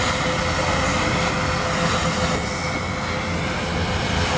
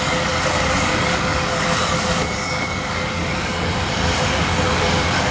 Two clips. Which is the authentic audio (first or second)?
first